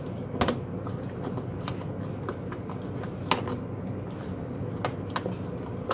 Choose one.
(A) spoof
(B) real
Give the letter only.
B